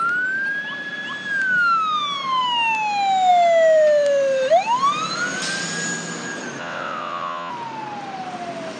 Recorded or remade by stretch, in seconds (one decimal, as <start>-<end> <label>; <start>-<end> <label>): 0.0-6.6 recorded; 6.6-7.5 remade; 7.5-8.8 recorded